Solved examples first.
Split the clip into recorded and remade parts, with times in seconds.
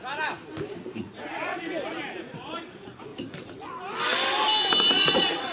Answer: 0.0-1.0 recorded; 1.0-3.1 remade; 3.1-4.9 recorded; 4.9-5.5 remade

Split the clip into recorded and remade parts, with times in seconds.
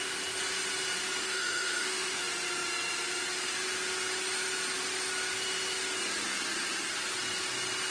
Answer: 0.0-1.2 recorded; 1.2-2.2 remade; 2.2-7.9 recorded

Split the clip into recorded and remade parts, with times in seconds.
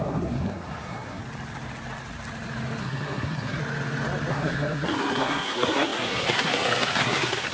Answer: 0.0-1.2 remade; 1.2-2.8 recorded; 2.8-3.6 remade; 3.6-4.3 recorded; 4.3-7.5 remade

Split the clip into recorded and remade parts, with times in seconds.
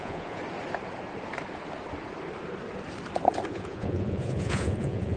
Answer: 0.0-0.4 remade; 0.4-3.5 recorded; 3.5-5.2 remade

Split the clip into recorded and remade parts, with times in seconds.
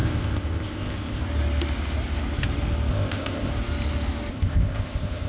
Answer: 0.0-1.2 remade; 1.2-2.9 recorded; 2.9-3.5 remade; 3.5-4.3 recorded; 4.3-5.3 remade